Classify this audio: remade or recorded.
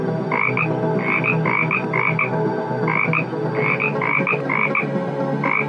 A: recorded